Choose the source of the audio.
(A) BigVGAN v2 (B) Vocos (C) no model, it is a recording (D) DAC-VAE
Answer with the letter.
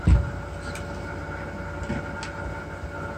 C